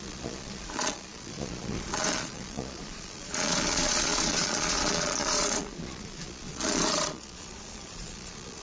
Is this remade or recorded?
remade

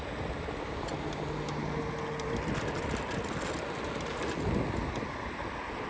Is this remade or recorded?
recorded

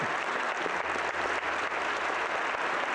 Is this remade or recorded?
recorded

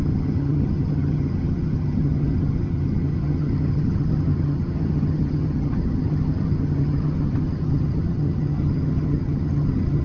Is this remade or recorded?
remade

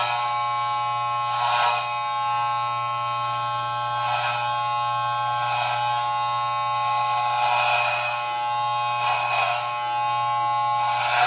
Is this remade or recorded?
recorded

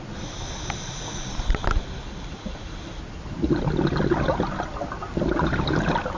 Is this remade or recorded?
recorded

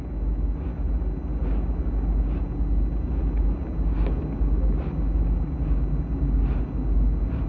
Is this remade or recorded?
recorded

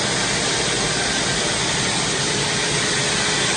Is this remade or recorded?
recorded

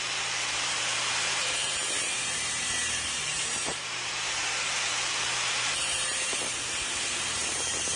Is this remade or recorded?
remade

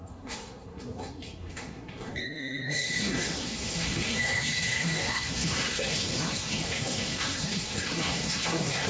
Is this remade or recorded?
remade